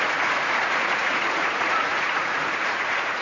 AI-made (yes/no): yes